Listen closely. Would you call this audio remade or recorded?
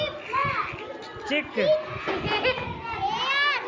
recorded